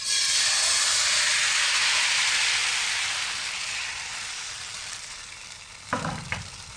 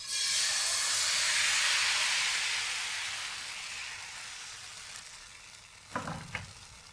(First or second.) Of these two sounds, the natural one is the second